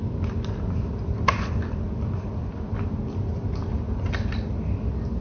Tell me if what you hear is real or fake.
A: real